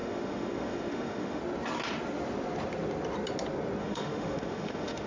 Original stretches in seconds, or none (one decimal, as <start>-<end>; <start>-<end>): 1.4-3.8